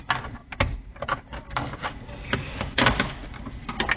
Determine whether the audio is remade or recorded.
recorded